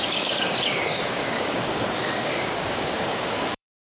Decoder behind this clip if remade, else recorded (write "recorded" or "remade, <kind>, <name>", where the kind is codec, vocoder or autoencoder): remade, codec, DAC